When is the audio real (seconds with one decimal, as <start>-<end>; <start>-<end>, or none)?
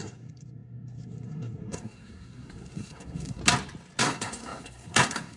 3.4-4.0